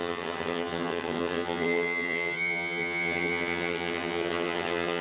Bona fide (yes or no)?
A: no